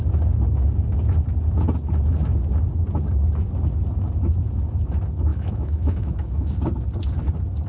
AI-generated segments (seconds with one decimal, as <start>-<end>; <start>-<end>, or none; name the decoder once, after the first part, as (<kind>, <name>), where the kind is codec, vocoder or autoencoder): 5.3-6.5 (autoencoder, DAC-VAE)